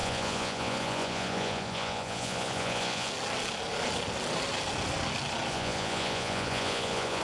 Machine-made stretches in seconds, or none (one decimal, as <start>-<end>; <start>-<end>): 0.0-3.1; 5.5-7.2